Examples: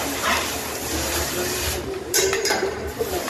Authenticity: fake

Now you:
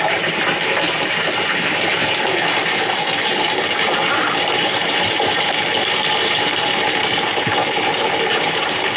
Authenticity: fake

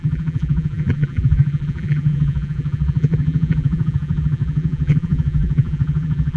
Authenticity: fake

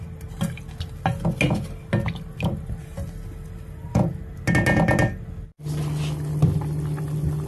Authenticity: real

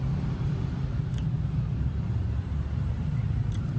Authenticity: fake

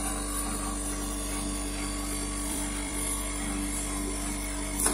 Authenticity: fake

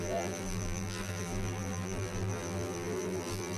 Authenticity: fake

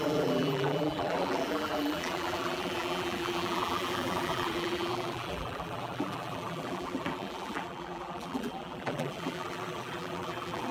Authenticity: fake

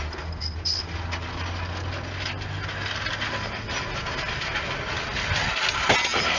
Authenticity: real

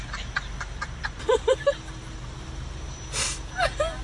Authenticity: real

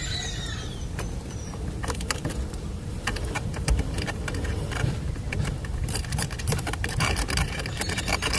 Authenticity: fake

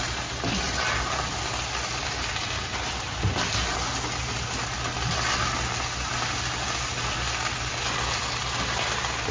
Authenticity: real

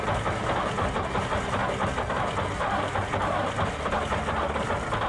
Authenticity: real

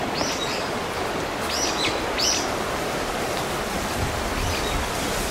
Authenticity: real